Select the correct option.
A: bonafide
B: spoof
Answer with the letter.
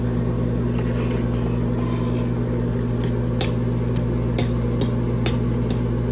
A